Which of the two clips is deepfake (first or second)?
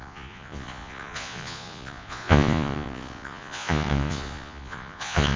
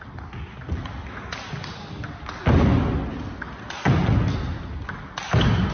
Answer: first